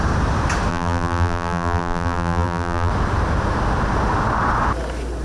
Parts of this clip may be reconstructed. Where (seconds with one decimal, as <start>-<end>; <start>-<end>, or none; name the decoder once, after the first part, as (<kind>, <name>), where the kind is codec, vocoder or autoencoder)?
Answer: 0.7-2.9 (vocoder, BigVGAN v2)